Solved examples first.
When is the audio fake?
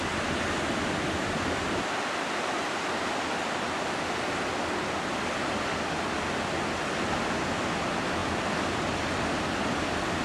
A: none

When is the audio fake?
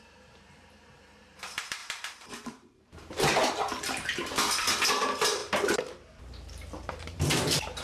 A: 0.0-4.2 (vocoder, BigVGAN v2); 5.0-7.8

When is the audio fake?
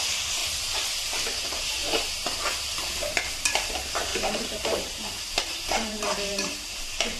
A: 0.0-0.4 (vocoder, BigVGAN v2); 1.4-1.8; 3.2-7.2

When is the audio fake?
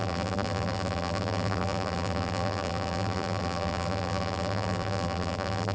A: 0.0-5.7 (vocoder, BigVGAN v2)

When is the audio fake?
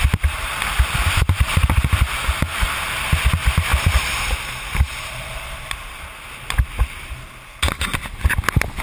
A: none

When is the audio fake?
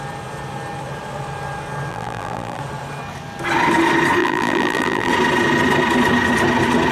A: 1.9-2.6 (vocoder, BigVGAN v2); 4.2-5.1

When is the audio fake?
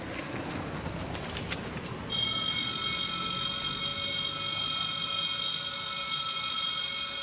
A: none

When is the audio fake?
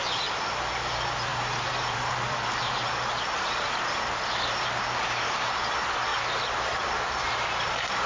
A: 1.3-5.6 (vocoder, BigVGAN v2); 6.1-8.1